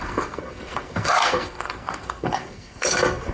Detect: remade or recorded remade